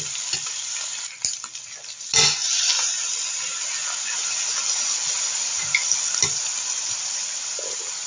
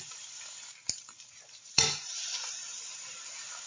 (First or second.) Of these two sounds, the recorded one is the first